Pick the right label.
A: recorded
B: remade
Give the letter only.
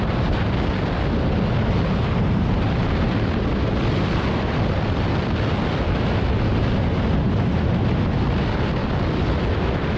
A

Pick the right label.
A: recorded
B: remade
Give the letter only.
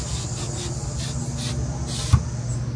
A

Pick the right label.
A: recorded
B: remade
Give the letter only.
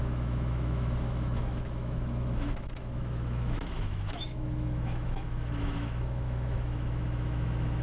B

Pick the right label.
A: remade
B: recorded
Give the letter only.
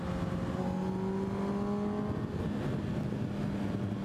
B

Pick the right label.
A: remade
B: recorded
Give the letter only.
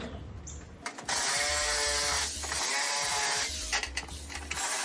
B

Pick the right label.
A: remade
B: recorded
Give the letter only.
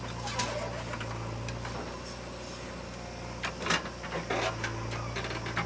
B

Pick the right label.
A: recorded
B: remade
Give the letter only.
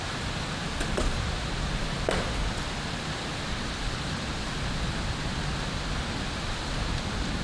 A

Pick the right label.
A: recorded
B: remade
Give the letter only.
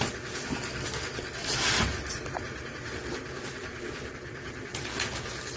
A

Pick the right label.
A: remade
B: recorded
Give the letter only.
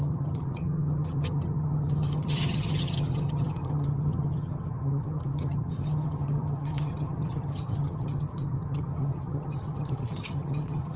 A